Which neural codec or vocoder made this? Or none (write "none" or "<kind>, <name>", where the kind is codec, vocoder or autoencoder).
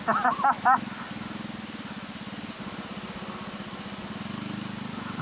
none